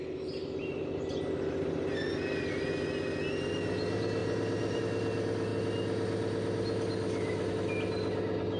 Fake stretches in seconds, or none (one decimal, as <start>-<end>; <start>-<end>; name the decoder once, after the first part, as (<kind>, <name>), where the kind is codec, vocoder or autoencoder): 4.2-4.8 (vocoder, BigVGAN v2)